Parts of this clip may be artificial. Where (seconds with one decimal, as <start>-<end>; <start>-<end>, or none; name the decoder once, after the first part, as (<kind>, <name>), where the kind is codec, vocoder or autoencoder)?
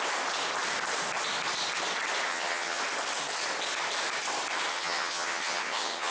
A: 2.3-2.8 (vocoder, HiFi-GAN); 4.7-6.1